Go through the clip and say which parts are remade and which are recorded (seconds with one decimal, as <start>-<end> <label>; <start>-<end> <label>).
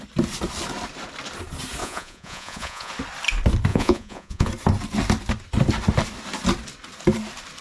0.0-1.8 recorded; 1.8-2.9 remade; 2.9-3.7 recorded; 3.7-4.5 remade; 4.5-7.6 recorded